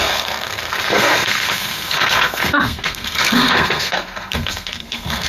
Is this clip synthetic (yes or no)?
yes